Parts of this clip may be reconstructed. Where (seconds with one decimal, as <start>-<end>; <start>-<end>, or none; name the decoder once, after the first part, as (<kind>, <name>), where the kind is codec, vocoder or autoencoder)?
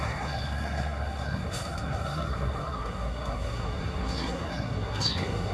0.0-5.5 (codec, SNAC)